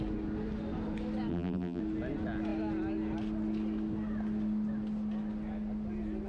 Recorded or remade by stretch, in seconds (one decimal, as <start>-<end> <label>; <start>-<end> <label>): 0.0-1.3 recorded; 1.3-1.8 remade; 1.8-6.3 recorded